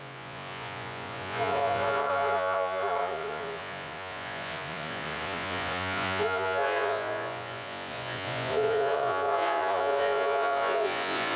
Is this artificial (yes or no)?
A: yes